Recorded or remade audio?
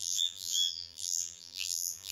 remade